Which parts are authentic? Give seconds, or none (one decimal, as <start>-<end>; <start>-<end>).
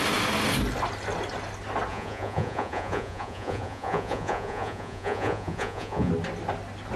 0.0-1.9; 6.1-7.0